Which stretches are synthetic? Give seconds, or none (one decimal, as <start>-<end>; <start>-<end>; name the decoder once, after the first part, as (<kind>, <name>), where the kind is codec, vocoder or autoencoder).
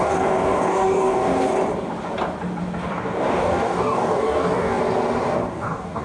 0.0-1.5 (codec, DAC); 2.9-4.8; 5.5-6.0